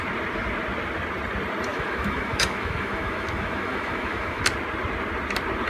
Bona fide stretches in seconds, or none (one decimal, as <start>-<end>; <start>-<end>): 0.0-1.7; 4.4-5.7